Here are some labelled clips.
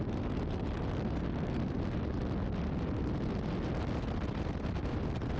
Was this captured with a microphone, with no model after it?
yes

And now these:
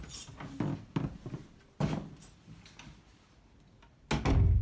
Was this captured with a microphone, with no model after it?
yes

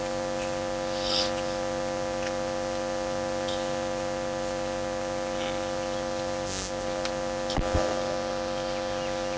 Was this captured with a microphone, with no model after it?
yes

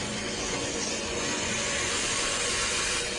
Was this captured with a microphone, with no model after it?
no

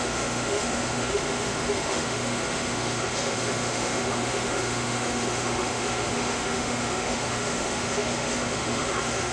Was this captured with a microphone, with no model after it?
no